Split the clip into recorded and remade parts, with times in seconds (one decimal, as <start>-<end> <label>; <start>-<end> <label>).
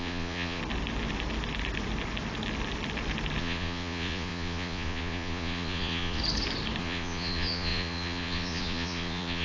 0.0-0.6 remade; 0.6-3.4 recorded; 3.4-6.2 remade; 6.2-6.8 recorded; 6.8-9.4 remade